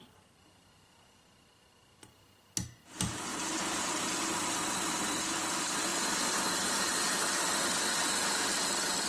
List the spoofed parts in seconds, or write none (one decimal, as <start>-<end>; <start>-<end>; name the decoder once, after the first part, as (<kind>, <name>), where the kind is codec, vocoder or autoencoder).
none